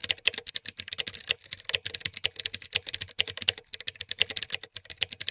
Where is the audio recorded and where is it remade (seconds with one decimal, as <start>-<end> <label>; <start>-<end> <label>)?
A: 0.0-5.3 recorded